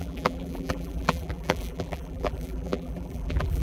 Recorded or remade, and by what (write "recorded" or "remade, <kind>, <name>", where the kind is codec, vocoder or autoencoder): remade, vocoder, BigVGAN v2